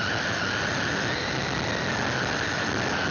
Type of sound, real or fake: real